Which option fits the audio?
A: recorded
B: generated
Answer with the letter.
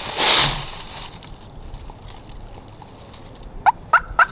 A